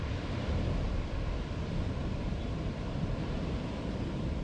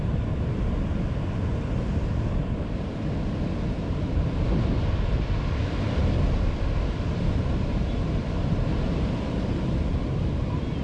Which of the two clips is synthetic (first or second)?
first